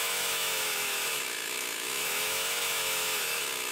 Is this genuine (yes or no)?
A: no